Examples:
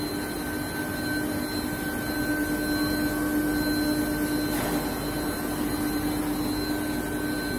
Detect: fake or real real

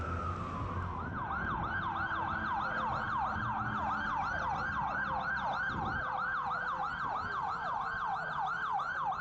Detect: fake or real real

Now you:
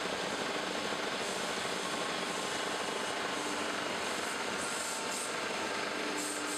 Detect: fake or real real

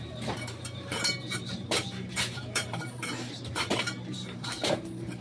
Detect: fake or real fake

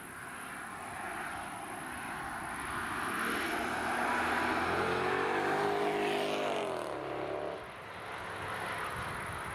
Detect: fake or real real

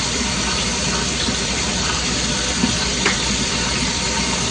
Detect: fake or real fake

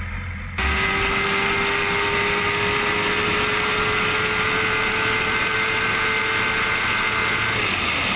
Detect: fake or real real